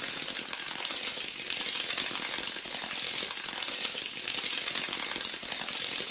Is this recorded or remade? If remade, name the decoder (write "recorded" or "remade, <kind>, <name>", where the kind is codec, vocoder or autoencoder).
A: recorded